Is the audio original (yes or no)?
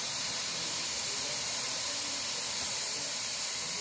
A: no